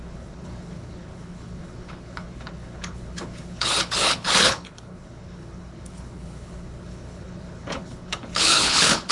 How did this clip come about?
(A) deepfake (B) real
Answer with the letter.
A